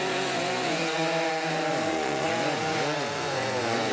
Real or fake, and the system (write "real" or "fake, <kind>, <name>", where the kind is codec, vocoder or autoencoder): fake, vocoder, Vocos